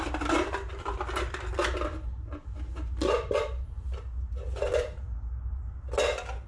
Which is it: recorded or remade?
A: recorded